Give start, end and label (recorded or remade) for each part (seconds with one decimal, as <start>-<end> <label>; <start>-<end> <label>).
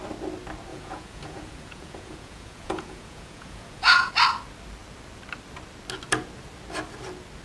0.0-0.7 recorded; 0.7-4.1 remade; 4.1-7.4 recorded